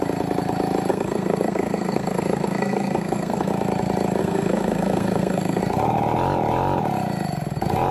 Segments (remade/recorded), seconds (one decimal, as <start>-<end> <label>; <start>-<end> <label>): 0.0-0.9 recorded; 0.9-3.5 remade; 3.5-4.2 recorded; 4.2-5.6 remade; 5.6-7.9 recorded